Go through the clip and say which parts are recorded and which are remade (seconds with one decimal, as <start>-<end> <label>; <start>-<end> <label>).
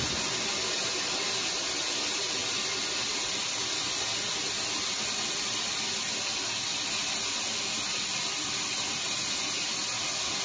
0.0-10.4 recorded